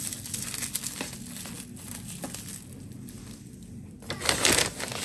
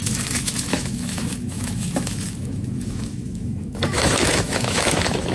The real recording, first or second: first